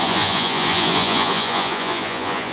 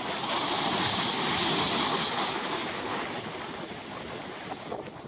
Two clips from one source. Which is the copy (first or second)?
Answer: first